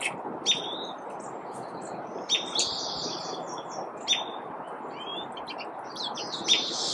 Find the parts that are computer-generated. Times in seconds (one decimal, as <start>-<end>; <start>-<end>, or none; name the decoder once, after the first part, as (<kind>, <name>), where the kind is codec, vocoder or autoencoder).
none